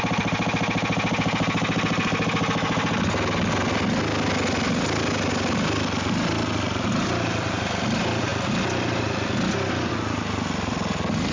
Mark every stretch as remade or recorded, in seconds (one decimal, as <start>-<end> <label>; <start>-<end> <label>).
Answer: 0.0-11.3 recorded

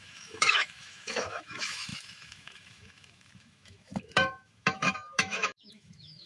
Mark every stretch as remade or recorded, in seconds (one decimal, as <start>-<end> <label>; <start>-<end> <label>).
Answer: 0.0-6.3 remade

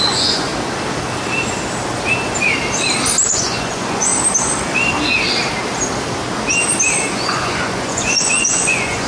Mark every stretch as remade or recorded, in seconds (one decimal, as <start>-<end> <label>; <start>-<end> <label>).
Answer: 0.0-0.5 remade; 0.5-3.3 recorded; 3.3-4.1 remade; 4.1-7.1 recorded; 7.1-9.1 remade